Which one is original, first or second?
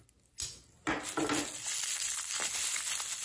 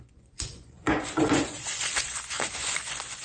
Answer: first